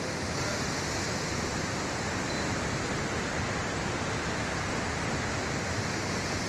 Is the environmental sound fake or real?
real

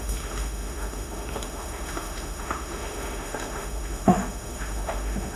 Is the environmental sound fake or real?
fake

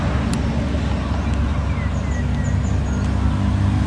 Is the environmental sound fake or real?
real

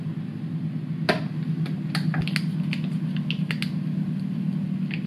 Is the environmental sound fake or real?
real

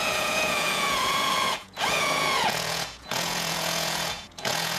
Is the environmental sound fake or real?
fake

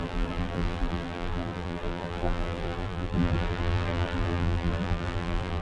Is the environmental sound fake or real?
fake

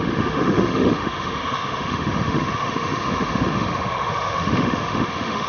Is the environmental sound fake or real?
fake